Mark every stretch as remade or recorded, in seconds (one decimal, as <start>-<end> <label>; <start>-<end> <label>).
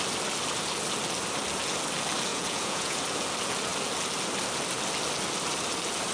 0.0-2.3 recorded; 2.3-3.0 remade; 3.0-6.1 recorded